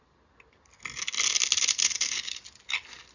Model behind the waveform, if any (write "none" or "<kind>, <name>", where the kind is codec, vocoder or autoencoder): none